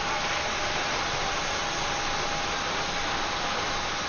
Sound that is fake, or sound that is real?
real